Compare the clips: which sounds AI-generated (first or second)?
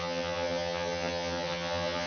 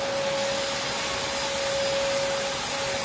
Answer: first